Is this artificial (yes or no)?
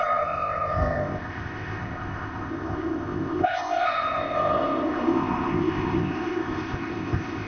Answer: yes